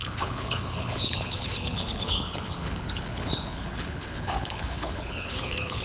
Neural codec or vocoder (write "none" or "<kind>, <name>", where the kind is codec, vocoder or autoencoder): codec, HILCodec